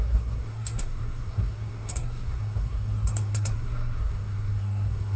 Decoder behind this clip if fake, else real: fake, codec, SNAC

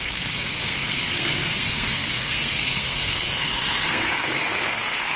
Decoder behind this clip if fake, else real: fake, codec, SNAC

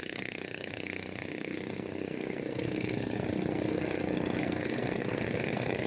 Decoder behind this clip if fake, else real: fake, codec, SNAC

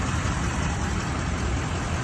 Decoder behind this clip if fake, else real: real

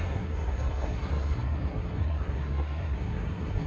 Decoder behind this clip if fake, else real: fake, codec, SNAC